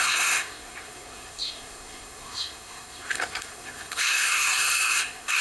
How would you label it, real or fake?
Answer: fake